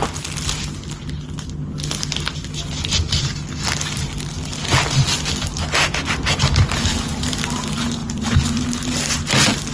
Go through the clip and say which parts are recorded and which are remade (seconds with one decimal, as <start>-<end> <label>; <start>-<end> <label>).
0.0-9.7 recorded